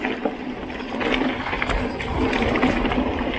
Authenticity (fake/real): real